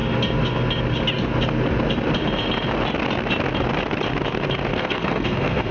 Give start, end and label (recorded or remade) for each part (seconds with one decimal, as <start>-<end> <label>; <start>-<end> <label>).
0.0-4.7 recorded; 4.7-5.7 remade